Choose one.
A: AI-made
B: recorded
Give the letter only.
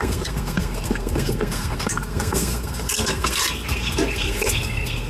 A